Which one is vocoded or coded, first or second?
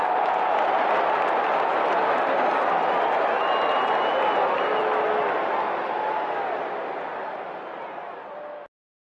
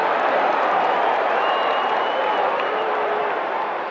second